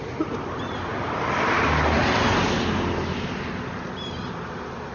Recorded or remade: recorded